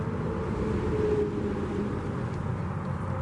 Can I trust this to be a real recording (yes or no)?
yes